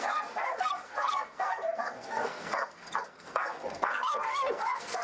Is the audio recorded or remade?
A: remade